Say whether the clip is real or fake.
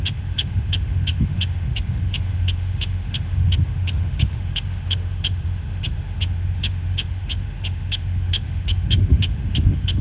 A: fake